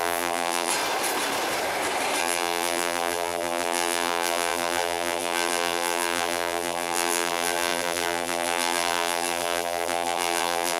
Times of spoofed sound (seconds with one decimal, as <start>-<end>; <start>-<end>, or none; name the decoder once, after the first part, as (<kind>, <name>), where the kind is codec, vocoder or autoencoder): 0.0-0.7 (vocoder, BigVGAN v2); 2.2-10.8